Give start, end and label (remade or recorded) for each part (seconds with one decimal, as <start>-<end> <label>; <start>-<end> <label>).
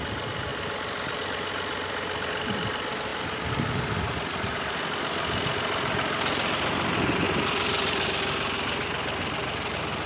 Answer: 0.0-10.1 recorded